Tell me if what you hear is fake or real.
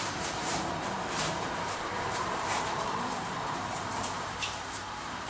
fake